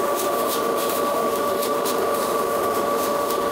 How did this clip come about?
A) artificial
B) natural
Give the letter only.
A